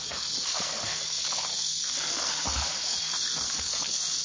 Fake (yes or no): yes